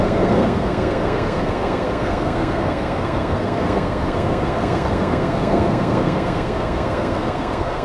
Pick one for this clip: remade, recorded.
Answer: remade